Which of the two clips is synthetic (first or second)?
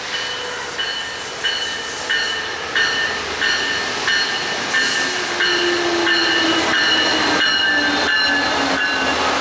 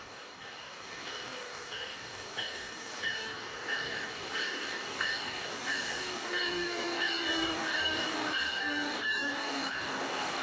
second